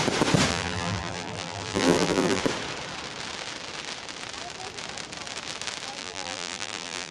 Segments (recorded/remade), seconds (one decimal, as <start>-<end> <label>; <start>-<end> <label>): 0.0-0.5 recorded; 0.5-2.4 remade; 2.4-6.0 recorded; 6.0-7.1 remade